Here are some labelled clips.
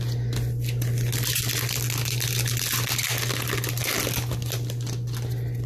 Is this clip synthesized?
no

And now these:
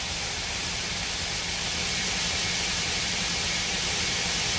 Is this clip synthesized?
no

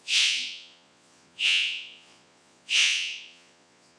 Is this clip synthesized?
yes